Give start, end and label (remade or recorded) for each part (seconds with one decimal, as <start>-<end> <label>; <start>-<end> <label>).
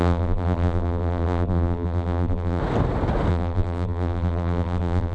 0.0-2.6 remade; 2.6-3.3 recorded; 3.3-5.1 remade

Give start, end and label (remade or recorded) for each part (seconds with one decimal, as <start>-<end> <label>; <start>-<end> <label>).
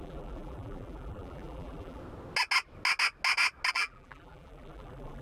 0.0-2.0 remade; 2.0-3.7 recorded; 3.7-5.2 remade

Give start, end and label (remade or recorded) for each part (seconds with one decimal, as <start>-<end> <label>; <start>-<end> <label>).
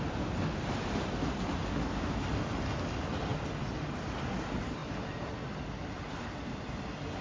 0.0-4.8 recorded; 4.8-5.3 remade; 5.3-7.2 recorded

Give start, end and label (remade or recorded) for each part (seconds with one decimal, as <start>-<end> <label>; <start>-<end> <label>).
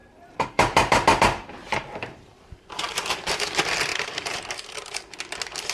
0.0-3.4 remade; 3.4-3.9 recorded; 3.9-5.2 remade; 5.2-5.7 recorded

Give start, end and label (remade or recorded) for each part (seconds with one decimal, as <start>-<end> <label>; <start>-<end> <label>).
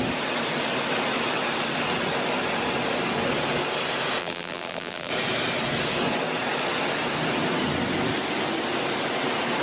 0.0-4.2 recorded; 4.2-5.1 remade; 5.1-9.6 recorded